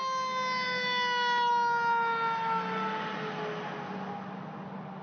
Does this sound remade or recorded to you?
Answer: recorded